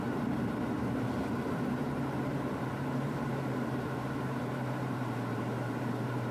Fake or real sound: fake